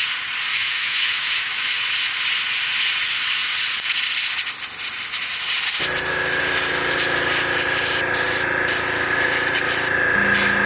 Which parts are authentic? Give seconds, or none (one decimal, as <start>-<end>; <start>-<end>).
0.0-0.5; 1.9-10.7